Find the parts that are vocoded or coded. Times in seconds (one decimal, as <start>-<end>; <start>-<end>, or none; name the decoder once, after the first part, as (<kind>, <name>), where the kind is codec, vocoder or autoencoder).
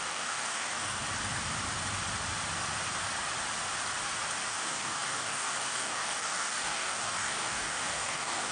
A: 0.0-1.0 (codec, DAC); 4.5-8.5